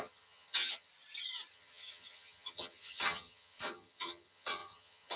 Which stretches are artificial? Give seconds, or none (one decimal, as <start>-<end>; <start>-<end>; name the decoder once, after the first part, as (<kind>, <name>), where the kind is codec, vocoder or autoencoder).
0.0-0.9 (vocoder, HiFi-GAN); 1.5-5.2